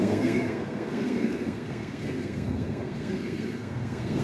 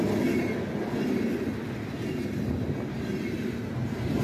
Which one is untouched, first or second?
second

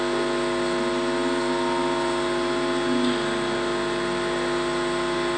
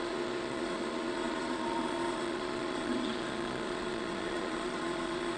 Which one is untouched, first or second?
first